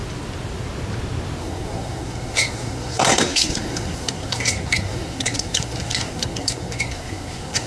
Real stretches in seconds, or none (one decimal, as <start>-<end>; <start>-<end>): 0.0-1.4